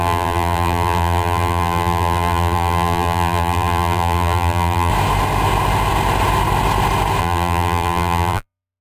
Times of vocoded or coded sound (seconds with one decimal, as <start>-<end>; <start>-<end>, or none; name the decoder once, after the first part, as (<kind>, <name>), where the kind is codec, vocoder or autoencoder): 0.0-4.9 (vocoder, BigVGAN v2); 7.2-8.8